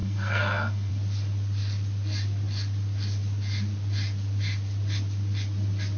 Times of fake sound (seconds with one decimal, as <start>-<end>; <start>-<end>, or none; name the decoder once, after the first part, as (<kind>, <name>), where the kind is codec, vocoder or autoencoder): 0.0-0.9 (codec, SNAC)